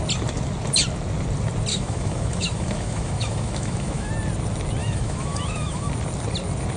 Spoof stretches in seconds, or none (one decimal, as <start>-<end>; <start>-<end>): 1.7-4.1; 4.8-5.9